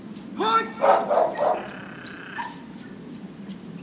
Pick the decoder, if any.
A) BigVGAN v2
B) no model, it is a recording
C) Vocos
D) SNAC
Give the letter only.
B